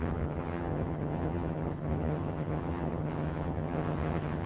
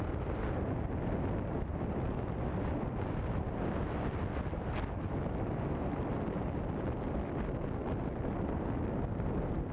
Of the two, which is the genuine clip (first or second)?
second